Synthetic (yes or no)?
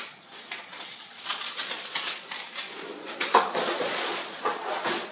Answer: yes